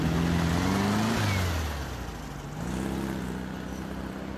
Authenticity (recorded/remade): recorded